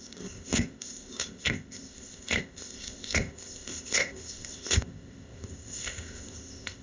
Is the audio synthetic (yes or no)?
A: yes